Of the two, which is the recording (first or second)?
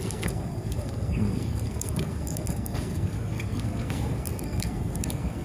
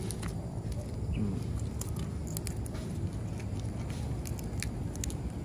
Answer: second